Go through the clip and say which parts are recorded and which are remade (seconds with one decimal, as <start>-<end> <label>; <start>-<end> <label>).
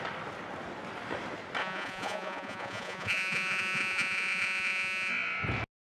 0.0-1.6 recorded; 1.6-5.1 remade; 5.1-5.8 recorded